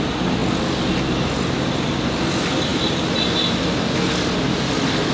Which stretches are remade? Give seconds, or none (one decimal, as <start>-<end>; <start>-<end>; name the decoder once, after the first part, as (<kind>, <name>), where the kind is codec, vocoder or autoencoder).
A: none